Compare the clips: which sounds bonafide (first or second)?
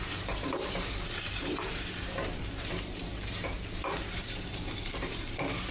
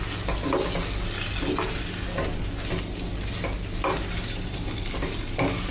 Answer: second